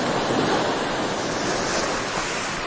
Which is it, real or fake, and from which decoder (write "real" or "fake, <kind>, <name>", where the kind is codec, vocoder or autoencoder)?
real